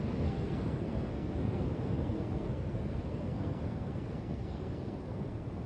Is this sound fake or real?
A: fake